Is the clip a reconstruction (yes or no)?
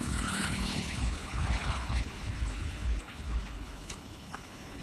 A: yes